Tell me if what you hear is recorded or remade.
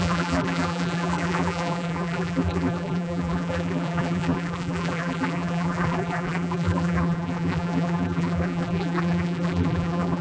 remade